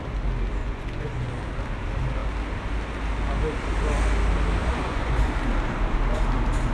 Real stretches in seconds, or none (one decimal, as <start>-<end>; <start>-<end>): 0.0-0.6; 1.3-4.6; 5.3-6.7